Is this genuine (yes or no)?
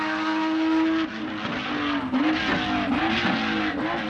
yes